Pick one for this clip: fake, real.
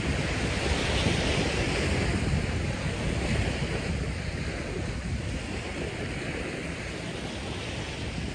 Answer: real